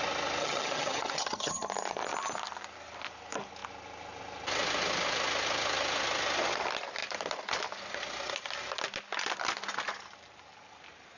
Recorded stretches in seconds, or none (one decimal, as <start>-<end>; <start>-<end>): 0.0-0.4; 1.7-11.2